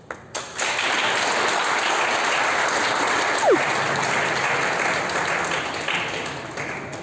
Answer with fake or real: real